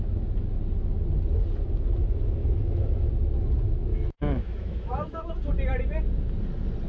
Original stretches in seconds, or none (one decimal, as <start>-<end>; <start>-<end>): 0.0-2.4; 3.1-3.9; 5.3-6.9